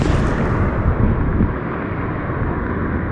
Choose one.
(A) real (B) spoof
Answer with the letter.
A